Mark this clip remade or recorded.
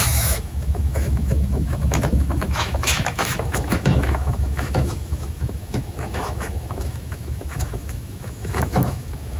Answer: remade